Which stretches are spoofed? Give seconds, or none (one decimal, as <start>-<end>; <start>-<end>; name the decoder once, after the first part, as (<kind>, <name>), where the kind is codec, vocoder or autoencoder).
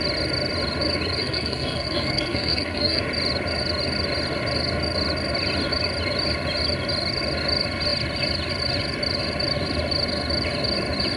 1.2-3.0 (codec, SNAC)